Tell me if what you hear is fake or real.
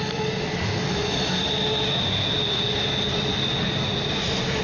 real